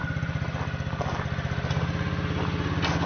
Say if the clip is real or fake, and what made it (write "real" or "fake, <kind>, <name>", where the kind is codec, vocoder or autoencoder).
real